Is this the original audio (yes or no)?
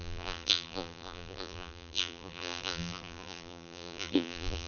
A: no